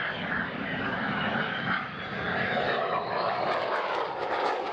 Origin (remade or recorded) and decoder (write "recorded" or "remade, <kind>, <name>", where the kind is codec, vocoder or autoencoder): remade, codec, DAC